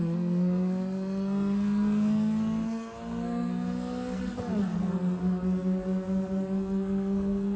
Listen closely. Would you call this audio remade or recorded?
remade